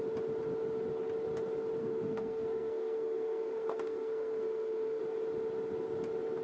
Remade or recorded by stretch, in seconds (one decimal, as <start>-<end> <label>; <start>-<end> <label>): 0.0-1.8 recorded; 1.8-5.0 remade; 5.0-6.4 recorded